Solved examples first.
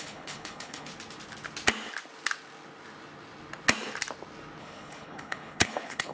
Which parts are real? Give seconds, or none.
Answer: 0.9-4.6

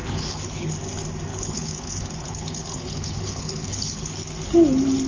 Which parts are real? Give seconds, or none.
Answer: 0.7-1.3; 4.1-5.1